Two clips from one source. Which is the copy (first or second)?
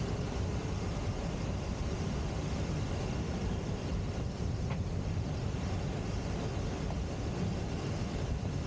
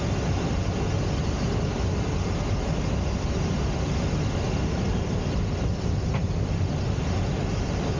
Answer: first